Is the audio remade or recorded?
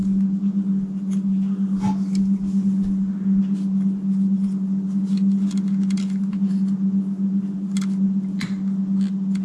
recorded